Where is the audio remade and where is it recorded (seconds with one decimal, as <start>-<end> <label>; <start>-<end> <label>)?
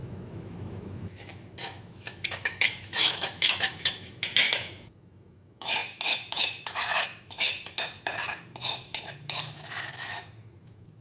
0.0-11.0 remade